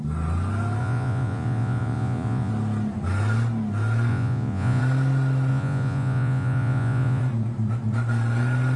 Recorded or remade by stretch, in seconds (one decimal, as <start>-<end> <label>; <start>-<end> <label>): 0.0-0.8 recorded; 0.8-2.5 remade; 2.5-4.1 recorded; 4.1-4.8 remade; 4.8-5.5 recorded; 5.5-7.2 remade; 7.2-8.8 recorded